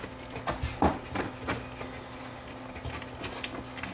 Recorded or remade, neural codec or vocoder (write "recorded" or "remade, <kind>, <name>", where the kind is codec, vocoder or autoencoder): recorded